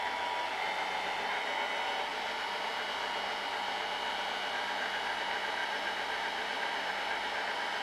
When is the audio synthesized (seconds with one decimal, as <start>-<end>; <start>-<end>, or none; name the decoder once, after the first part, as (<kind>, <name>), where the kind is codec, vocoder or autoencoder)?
2.1-2.9 (vocoder, BigVGAN v2); 5.6-6.9